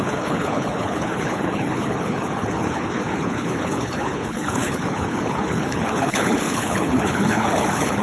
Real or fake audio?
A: fake